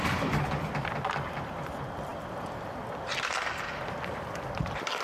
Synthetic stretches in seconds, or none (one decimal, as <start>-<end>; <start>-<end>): none